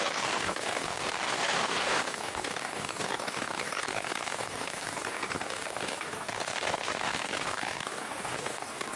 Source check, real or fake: fake